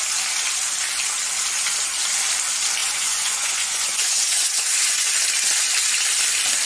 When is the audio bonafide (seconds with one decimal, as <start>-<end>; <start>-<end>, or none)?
0.0-2.8; 5.1-6.7